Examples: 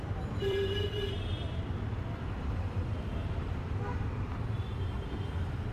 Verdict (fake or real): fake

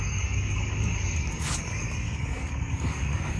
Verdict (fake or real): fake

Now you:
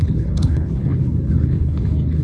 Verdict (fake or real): fake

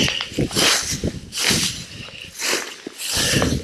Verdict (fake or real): real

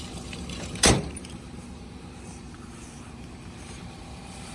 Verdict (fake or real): fake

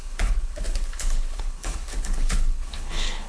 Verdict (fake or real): fake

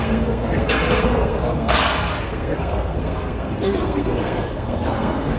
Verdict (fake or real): fake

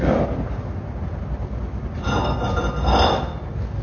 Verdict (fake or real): real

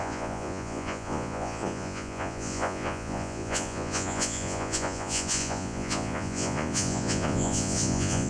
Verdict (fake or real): fake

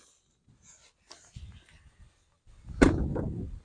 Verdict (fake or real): real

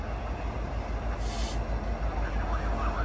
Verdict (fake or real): real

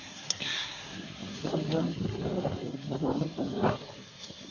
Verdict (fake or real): fake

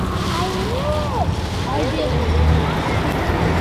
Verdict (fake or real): real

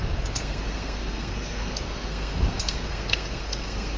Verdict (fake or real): fake